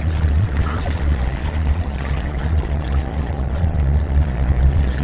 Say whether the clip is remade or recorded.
remade